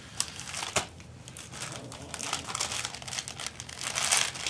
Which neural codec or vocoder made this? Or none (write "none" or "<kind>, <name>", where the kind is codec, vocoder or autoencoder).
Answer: none